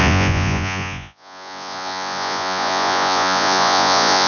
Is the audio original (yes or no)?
no